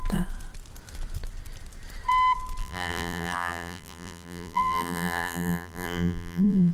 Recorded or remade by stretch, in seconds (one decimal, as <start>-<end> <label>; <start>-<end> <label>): 0.0-2.6 recorded; 2.6-6.7 remade